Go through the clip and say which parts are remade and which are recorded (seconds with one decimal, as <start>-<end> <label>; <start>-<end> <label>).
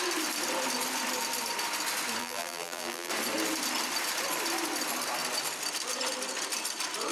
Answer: 0.0-2.2 recorded; 2.2-3.1 remade; 3.1-7.1 recorded